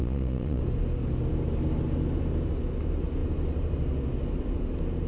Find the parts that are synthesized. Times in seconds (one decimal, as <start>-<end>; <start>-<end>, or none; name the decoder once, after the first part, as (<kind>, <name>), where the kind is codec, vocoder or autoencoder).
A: 0.0-0.6 (vocoder, Vocos)

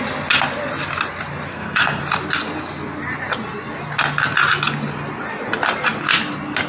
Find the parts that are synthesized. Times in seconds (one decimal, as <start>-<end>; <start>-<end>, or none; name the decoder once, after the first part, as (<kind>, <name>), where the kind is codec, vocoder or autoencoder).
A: 1.5-2.0 (codec, SNAC)